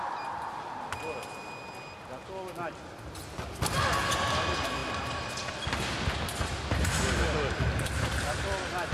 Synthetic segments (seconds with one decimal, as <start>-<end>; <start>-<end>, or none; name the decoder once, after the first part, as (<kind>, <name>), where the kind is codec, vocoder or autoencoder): none

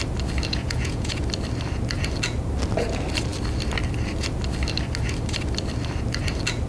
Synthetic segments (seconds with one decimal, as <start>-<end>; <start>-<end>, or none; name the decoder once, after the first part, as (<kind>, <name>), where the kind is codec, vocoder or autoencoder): 0.5-1.2 (vocoder, Vocos)

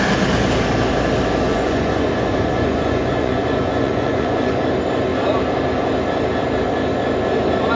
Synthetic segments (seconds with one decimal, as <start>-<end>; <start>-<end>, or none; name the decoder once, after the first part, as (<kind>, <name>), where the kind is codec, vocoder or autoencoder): 1.5-4.6 (vocoder, Vocos)

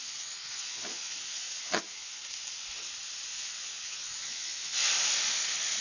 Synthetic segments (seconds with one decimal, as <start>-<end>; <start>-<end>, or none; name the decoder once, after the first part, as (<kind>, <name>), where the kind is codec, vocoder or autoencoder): 0.0-2.2 (vocoder, Vocos); 3.3-4.9